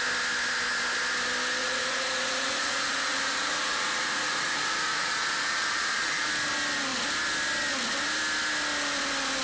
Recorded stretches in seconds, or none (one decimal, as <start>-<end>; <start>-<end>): 0.0-1.6; 6.3-9.4